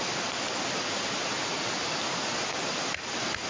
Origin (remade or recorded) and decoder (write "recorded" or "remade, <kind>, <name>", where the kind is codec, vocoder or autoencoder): recorded